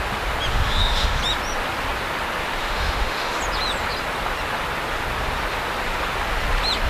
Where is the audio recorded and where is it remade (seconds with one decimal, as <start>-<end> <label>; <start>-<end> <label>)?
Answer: 0.0-0.5 recorded; 0.5-1.2 remade; 1.2-2.6 recorded; 2.6-3.4 remade; 3.4-6.9 recorded